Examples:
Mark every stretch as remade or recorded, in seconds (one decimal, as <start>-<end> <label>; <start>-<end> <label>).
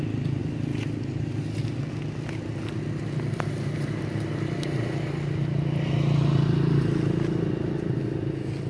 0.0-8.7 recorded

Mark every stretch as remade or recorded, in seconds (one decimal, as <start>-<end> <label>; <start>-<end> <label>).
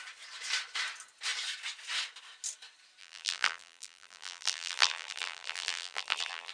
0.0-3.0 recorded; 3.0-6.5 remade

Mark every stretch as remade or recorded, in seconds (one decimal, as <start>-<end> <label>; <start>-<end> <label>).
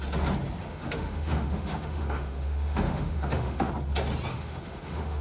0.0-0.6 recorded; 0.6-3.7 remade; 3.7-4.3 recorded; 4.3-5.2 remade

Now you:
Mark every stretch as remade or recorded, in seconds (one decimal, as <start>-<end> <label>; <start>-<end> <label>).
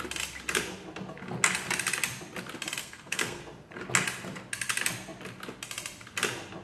0.0-2.8 recorded; 2.8-3.4 remade; 3.4-6.6 recorded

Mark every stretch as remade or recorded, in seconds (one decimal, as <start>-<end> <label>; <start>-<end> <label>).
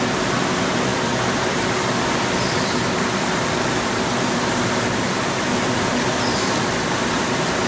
0.0-7.7 recorded